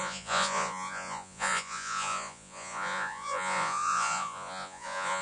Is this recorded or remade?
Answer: remade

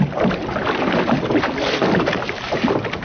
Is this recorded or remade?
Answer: recorded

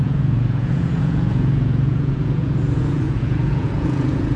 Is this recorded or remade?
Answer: remade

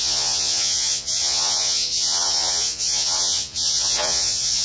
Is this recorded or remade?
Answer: remade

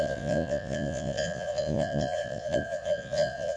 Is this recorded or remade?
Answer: remade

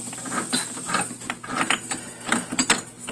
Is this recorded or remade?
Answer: recorded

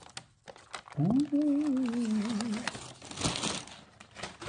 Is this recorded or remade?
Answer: recorded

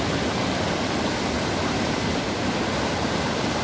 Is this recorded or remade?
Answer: recorded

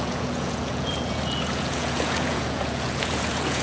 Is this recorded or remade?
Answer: remade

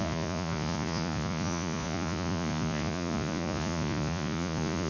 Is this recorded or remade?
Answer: remade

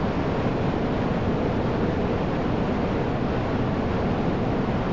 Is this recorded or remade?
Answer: recorded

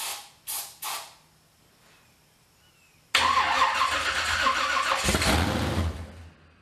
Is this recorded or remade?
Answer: recorded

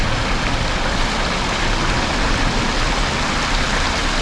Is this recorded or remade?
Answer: recorded